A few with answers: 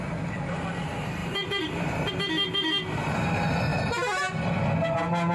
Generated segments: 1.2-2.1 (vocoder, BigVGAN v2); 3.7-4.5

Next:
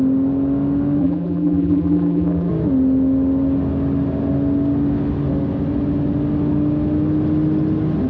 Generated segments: 1.0-2.5 (vocoder, BigVGAN v2)

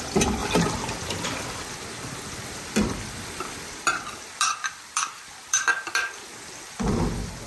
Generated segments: 0.0-7.5 (vocoder, BigVGAN v2)